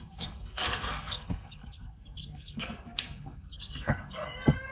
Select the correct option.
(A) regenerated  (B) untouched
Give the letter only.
A